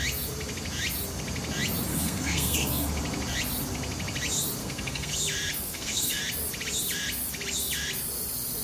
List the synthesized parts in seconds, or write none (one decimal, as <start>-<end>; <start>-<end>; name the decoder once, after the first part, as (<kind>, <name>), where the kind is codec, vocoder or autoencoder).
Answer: 1.9-2.9 (codec, SNAC); 4.6-5.1; 5.5-6.2